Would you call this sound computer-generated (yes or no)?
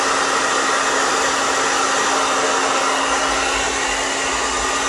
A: no